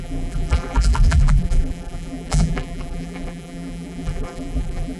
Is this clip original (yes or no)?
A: no